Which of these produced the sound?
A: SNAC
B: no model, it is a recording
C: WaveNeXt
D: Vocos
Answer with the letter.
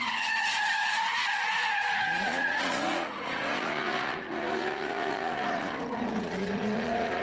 D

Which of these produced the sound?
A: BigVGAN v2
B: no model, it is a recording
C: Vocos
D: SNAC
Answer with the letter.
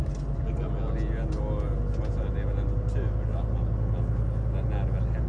B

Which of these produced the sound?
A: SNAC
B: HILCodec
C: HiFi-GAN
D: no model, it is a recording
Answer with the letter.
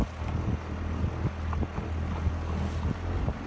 D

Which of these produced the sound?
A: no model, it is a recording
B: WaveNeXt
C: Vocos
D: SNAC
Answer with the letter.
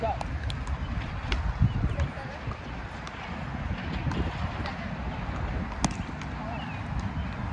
A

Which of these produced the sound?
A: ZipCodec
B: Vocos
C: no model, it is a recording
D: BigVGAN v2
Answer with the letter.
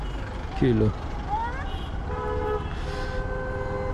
C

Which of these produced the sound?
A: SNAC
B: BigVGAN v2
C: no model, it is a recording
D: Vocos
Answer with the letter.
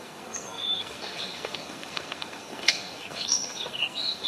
A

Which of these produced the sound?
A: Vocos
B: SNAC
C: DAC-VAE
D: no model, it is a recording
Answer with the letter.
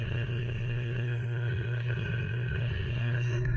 B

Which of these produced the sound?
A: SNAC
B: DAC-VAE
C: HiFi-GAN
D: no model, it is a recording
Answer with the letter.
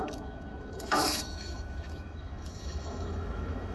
B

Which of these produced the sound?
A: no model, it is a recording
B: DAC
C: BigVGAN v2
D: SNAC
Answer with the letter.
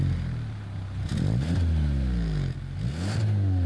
A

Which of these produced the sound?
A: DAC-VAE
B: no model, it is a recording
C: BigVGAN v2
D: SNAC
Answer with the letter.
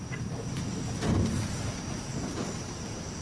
C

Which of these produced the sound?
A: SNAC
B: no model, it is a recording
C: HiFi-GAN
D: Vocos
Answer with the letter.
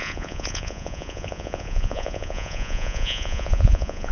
D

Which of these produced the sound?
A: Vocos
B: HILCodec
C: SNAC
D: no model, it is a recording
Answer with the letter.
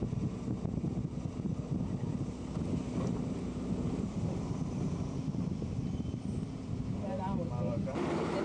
D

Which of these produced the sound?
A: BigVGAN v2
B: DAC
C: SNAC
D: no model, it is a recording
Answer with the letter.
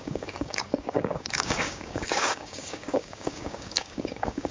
B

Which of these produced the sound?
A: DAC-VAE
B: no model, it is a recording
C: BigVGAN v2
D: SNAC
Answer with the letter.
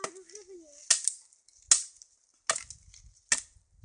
B